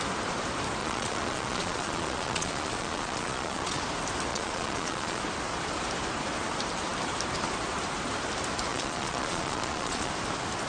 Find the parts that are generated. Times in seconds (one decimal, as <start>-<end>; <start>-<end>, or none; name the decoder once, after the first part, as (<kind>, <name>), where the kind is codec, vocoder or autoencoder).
0.8-3.8 (vocoder, Vocos); 4.3-5.2; 8.7-10.1